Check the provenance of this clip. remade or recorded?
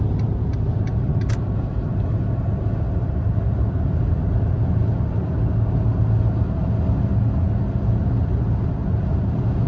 recorded